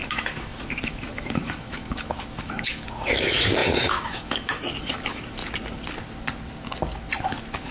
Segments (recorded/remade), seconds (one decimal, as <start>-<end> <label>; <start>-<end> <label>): 0.0-5.4 remade; 5.4-7.2 recorded; 7.2-7.7 remade